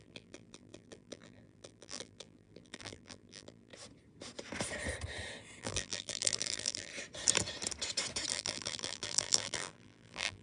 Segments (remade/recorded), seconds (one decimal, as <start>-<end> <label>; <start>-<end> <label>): 0.0-3.7 remade; 3.7-5.6 recorded; 5.6-6.9 remade; 6.9-8.3 recorded; 8.3-10.4 remade